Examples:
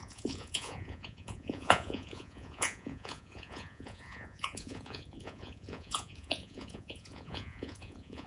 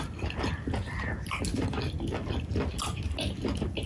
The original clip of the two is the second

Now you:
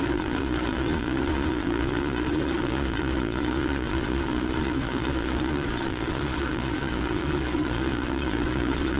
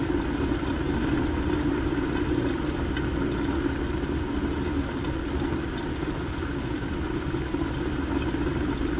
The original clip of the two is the second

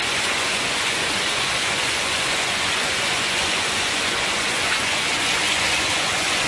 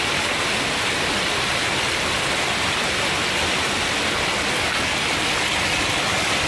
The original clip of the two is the second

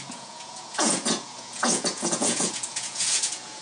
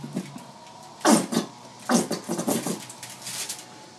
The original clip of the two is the second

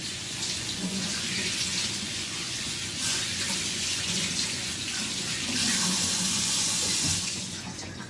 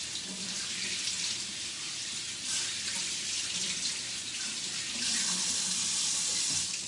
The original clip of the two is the second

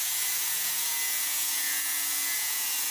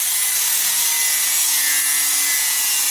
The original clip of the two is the second